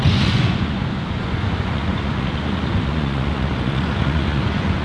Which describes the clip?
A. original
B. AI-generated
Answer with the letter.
B